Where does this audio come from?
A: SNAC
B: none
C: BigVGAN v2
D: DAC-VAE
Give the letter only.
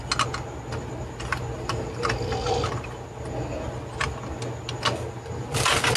B